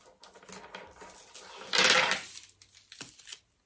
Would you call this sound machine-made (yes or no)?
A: no